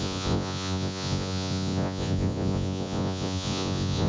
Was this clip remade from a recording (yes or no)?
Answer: yes